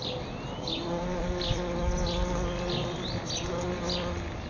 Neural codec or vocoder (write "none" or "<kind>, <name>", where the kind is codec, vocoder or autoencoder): none